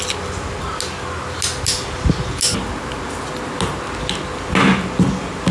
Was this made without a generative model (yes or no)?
yes